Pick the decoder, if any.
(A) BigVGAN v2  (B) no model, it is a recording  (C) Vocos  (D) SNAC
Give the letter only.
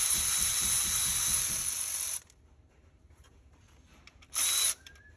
A